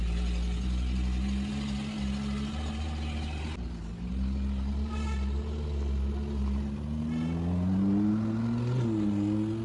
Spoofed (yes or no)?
no